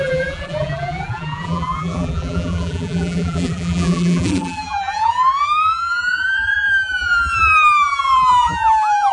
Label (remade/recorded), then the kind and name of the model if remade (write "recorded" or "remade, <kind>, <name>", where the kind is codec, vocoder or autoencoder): remade, vocoder, BigVGAN v2